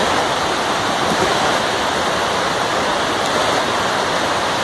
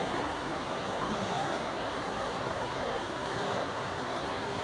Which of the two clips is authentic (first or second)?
first